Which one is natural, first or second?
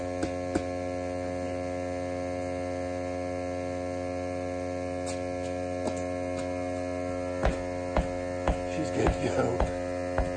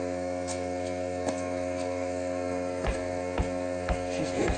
first